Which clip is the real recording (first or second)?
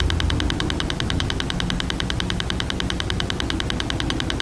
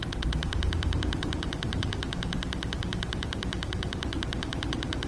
first